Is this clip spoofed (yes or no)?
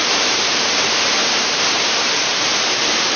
yes